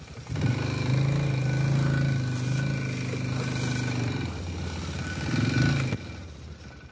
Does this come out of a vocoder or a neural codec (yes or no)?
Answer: no